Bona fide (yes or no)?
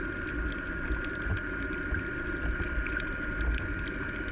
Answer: yes